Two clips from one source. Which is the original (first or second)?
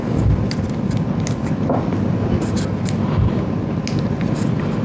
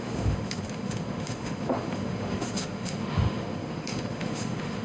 first